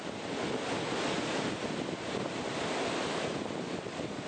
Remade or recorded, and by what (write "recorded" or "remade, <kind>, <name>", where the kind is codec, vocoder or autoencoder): recorded